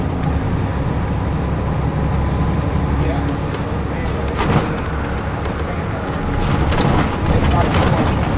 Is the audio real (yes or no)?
yes